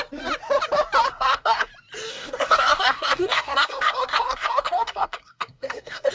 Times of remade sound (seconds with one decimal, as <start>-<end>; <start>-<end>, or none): 1.1-1.7; 2.1-6.1